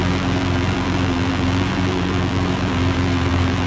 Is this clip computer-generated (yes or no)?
yes